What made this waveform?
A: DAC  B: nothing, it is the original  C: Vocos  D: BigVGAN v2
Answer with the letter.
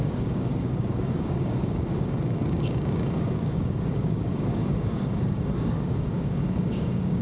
A